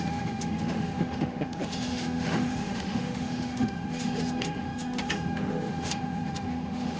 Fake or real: fake